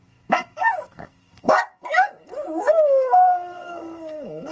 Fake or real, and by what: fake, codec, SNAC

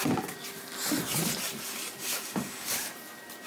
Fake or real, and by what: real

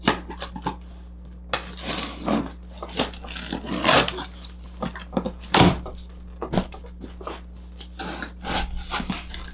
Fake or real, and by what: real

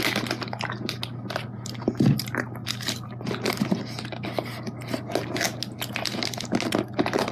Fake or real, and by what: real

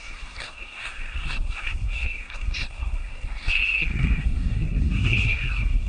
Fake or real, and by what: fake, codec, SNAC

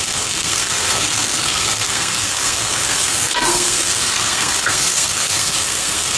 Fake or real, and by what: fake, codec, SNAC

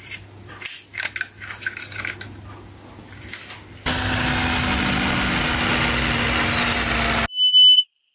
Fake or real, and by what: real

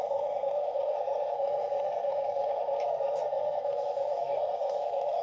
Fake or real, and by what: fake, codec, SNAC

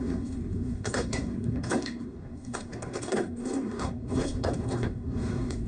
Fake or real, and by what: fake, codec, SNAC